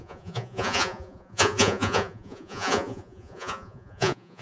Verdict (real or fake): fake